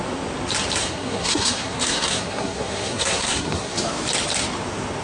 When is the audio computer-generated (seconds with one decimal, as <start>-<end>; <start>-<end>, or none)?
0.8-3.8